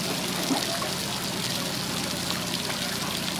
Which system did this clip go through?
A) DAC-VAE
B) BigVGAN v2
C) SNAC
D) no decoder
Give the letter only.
D